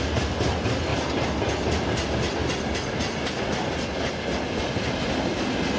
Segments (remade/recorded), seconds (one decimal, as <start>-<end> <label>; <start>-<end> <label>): 0.0-5.8 recorded